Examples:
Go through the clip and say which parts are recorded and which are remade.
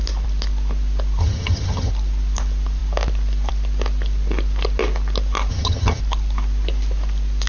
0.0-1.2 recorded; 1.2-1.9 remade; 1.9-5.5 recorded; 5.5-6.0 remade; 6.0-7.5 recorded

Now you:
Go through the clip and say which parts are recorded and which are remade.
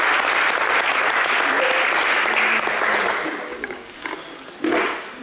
0.0-3.5 recorded; 3.5-4.1 remade; 4.1-5.2 recorded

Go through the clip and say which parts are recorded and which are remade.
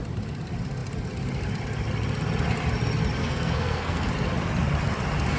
0.0-3.2 recorded; 3.2-4.1 remade; 4.1-5.4 recorded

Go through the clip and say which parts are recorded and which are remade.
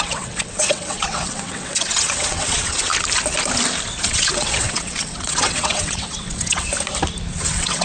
0.0-2.9 remade; 2.9-4.0 recorded; 4.0-6.7 remade; 6.7-7.3 recorded; 7.3-7.8 remade